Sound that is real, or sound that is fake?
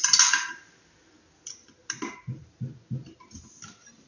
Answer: real